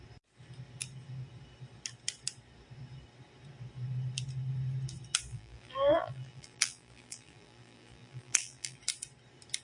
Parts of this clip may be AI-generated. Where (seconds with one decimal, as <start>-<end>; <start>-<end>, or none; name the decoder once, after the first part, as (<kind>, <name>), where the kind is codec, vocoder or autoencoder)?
5.3-8.8 (vocoder, BigVGAN v2)

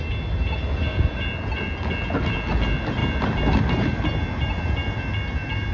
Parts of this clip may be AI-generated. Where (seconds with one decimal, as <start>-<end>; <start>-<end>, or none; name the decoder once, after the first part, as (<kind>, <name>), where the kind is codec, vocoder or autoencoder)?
none

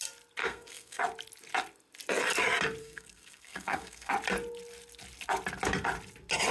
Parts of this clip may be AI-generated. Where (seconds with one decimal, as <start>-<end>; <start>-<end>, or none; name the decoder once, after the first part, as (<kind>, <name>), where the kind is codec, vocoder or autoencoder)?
0.4-1.0 (codec, SNAC); 2.8-4.1

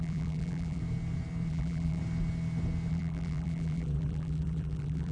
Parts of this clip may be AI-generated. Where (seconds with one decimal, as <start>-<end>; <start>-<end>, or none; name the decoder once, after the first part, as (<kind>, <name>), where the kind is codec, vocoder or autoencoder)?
0.0-0.8 (vocoder, BigVGAN v2); 1.5-2.0; 2.9-5.1

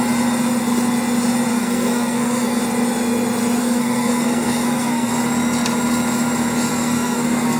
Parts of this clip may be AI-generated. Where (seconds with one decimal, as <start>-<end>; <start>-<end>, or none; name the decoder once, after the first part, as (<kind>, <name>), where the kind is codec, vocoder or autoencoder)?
1.5-2.6 (codec, SNAC); 3.6-5.1; 6.7-7.6

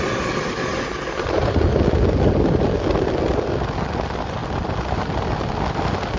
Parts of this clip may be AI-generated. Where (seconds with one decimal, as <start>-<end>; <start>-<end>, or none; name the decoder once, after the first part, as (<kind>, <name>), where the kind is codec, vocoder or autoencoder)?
none